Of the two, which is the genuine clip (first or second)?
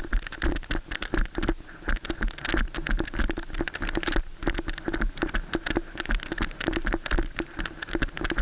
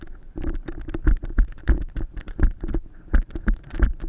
first